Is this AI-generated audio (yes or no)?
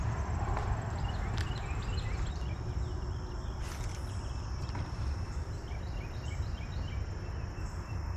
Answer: no